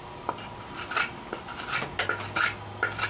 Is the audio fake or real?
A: real